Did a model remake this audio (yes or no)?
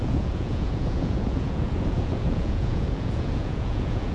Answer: yes